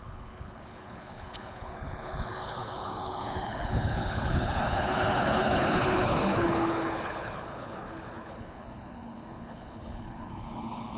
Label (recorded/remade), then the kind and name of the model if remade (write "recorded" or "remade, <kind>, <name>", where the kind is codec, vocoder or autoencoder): remade, codec, HILCodec